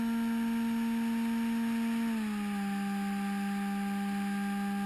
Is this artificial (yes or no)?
no